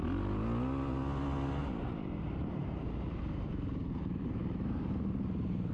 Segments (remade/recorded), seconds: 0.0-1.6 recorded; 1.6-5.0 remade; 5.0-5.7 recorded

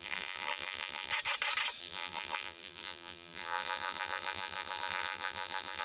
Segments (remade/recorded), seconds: 0.0-1.1 remade; 1.1-1.8 recorded; 1.8-5.8 remade

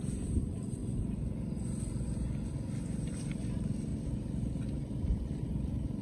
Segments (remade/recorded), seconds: 0.0-0.8 remade; 0.8-3.2 recorded; 3.2-6.0 remade

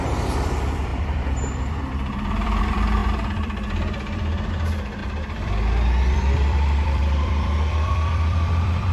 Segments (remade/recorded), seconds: 0.0-8.9 remade

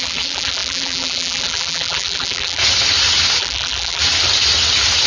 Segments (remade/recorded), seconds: 0.0-2.6 remade; 2.6-3.4 recorded; 3.4-4.0 remade; 4.0-5.1 recorded

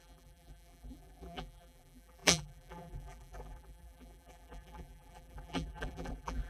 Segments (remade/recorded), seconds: 0.0-6.5 remade

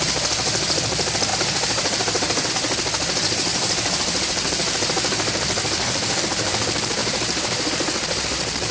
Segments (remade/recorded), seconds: 0.0-1.3 recorded; 1.3-2.5 remade; 2.5-3.5 recorded; 3.5-6.2 remade; 6.2-7.0 recorded; 7.0-7.7 remade; 7.7-8.7 recorded